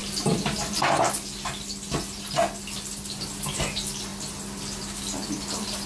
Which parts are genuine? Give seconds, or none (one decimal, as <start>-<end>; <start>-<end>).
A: 0.0-5.9